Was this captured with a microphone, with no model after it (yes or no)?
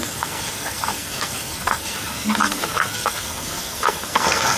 no